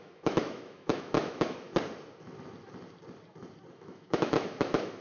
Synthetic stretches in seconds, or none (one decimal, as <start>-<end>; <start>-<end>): 0.0-1.7; 3.7-5.0